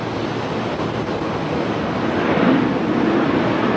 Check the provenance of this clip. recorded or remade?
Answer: recorded